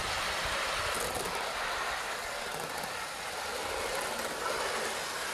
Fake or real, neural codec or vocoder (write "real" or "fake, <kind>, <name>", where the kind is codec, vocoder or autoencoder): real